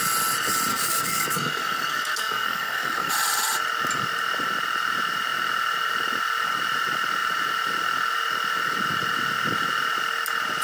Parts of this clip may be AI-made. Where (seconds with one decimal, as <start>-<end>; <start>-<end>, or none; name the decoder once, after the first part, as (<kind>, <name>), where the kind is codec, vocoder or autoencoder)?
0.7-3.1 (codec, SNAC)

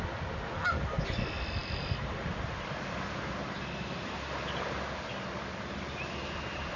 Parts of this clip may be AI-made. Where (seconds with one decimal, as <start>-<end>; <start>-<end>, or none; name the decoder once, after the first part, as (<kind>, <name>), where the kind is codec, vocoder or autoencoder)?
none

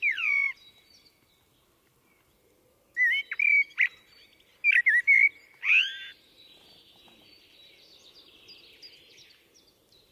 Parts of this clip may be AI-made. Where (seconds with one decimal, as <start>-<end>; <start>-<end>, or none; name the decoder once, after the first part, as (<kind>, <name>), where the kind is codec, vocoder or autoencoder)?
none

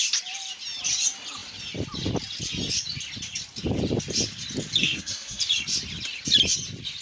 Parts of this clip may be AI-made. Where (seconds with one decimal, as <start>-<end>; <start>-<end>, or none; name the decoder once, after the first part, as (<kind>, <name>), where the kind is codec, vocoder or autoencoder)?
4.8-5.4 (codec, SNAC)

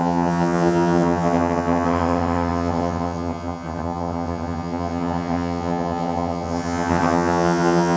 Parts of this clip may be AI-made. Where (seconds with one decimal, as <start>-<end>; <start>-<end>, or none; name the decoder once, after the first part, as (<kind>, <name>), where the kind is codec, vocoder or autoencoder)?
0.0-8.0 (vocoder, HiFi-GAN)

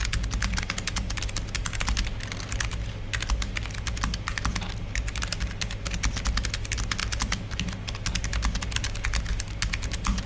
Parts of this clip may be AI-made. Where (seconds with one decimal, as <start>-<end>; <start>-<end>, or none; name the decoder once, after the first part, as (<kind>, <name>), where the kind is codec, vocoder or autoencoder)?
none

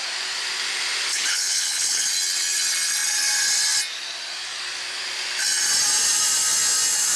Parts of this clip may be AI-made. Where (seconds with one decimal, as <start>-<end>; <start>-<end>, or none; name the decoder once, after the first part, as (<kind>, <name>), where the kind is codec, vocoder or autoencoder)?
1.1-2.1 (codec, HILCodec)